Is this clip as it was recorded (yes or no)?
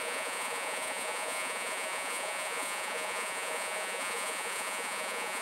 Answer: no